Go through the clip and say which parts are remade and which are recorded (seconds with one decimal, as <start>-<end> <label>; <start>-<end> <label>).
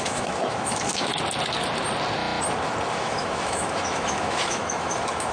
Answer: 0.0-1.1 remade; 1.1-2.9 recorded; 2.9-5.3 remade